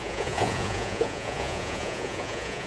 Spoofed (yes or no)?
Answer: yes